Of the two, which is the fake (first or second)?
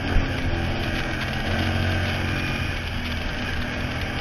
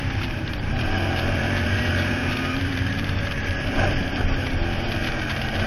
second